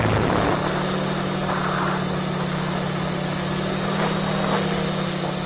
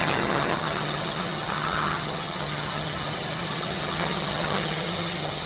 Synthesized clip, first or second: second